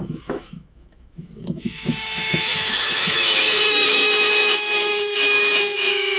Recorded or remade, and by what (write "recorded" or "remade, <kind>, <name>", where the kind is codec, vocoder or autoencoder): remade, autoencoder, DAC-VAE